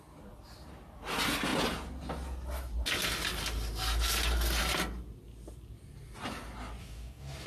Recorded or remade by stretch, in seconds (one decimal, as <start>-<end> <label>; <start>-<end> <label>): 0.0-6.8 recorded; 6.8-7.5 remade